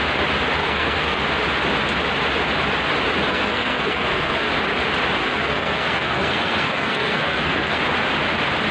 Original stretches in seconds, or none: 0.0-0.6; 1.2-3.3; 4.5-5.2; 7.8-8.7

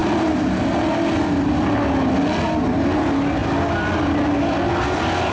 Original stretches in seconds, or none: 0.0-5.3

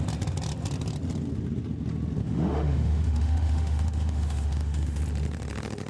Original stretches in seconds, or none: 0.0-2.2; 5.0-5.9

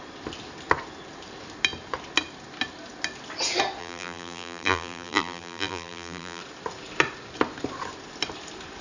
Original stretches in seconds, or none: 0.0-3.8; 6.4-8.8

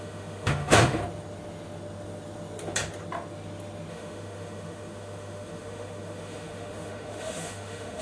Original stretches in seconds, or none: 1.0-3.9